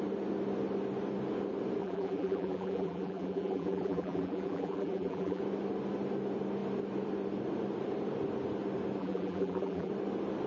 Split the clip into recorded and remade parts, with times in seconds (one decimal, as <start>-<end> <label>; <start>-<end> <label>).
0.0-1.8 recorded; 1.8-5.4 remade; 5.4-9.0 recorded; 9.0-9.9 remade; 9.9-10.5 recorded